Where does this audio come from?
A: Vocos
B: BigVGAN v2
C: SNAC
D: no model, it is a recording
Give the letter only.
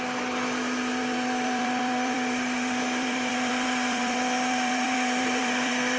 B